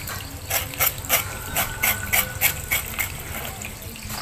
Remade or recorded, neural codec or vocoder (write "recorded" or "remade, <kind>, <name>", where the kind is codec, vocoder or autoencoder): recorded